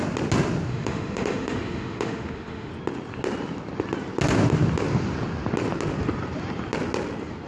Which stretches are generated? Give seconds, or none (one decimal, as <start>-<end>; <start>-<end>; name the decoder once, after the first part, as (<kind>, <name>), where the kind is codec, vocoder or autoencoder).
0.7-2.7 (autoencoder, DAC-VAE)

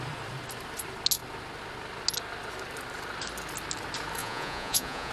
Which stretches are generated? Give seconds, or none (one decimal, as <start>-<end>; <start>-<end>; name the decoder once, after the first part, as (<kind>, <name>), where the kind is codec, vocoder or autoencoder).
4.2-5.1 (vocoder, Vocos)

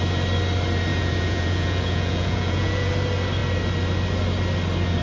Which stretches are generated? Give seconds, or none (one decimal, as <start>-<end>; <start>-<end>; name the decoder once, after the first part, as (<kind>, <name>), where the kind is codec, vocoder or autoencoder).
0.9-2.9 (vocoder, Vocos)

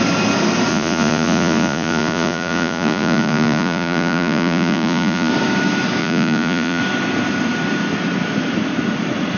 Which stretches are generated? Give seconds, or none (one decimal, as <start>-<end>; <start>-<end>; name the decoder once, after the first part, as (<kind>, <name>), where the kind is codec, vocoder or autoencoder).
0.7-5.3 (vocoder, Vocos); 6.0-6.8

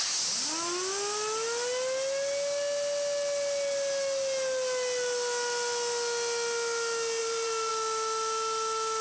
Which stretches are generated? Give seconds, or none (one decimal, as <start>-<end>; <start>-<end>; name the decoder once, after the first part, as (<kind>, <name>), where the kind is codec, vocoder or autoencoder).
7.2-7.7 (vocoder, BigVGAN v2)